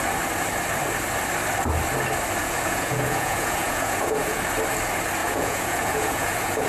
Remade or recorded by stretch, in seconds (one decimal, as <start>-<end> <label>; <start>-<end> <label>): 0.0-2.4 recorded; 2.4-4.4 remade; 4.4-5.2 recorded; 5.2-6.7 remade